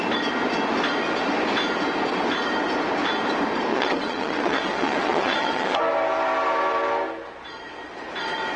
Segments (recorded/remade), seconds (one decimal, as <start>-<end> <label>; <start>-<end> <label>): 0.0-3.7 recorded; 3.7-5.8 remade; 5.8-8.6 recorded